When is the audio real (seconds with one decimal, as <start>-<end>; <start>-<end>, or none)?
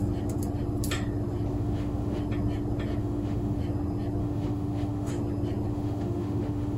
0.0-1.5; 2.2-3.0; 3.6-4.2; 5.1-5.7